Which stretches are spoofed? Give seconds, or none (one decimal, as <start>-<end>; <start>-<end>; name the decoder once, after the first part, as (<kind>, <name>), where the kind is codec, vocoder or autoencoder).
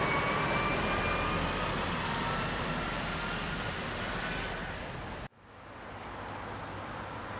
none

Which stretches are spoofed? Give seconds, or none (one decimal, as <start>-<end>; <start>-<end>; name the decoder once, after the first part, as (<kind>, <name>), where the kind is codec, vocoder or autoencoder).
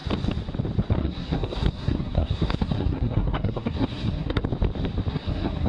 1.0-4.4 (codec, SNAC); 5.1-5.7